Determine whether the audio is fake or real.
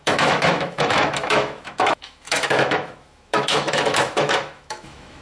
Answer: fake